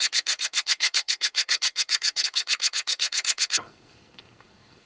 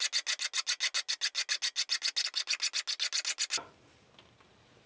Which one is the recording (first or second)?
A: second